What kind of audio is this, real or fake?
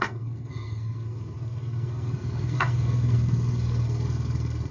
fake